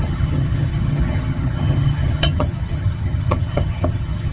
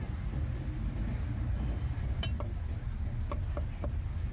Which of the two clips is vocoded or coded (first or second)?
first